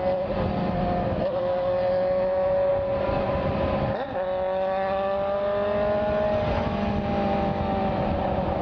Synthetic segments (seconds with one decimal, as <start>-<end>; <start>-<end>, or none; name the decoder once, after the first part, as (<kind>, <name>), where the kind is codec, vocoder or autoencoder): none